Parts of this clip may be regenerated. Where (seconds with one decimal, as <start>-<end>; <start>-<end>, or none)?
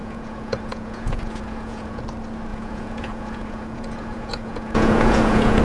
0.0-2.0; 2.5-5.6